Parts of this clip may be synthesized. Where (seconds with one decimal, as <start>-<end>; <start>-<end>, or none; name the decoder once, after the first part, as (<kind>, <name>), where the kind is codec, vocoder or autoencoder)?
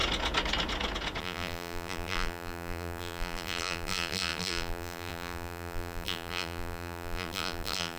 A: 1.2-8.0 (vocoder, BigVGAN v2)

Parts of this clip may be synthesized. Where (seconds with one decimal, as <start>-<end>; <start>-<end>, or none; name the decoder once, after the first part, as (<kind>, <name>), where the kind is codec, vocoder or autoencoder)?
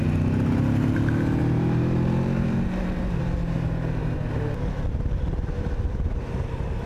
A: 1.4-3.2 (vocoder, BigVGAN v2)